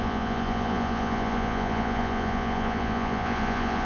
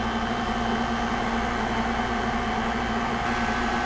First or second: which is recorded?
second